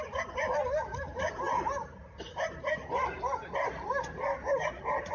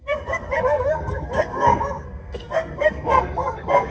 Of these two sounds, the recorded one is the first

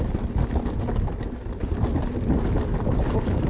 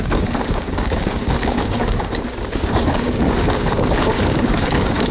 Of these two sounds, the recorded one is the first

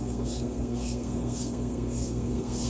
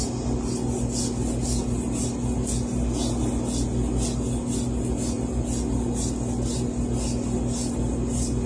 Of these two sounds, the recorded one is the second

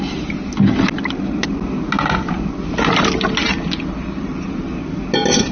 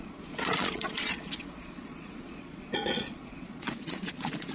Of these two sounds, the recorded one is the first